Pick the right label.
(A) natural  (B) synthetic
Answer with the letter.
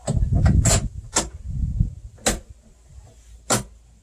A